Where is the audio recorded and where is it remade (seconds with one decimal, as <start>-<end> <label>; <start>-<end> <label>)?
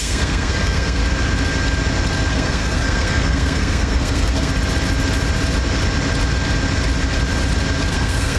0.0-1.0 remade; 1.0-2.3 recorded; 2.3-4.5 remade; 4.5-7.9 recorded; 7.9-8.4 remade